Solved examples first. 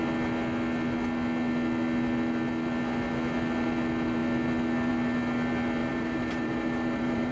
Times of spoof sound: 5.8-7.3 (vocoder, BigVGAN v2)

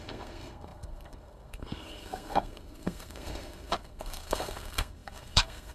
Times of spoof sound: 0.0-5.7 (codec, SNAC)

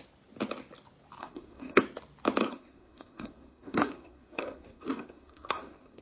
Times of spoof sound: 1.2-1.8 (codec, SNAC); 2.4-6.0

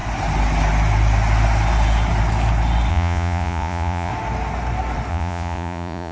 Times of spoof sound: 2.9-4.1 (vocoder, Vocos); 5.1-6.1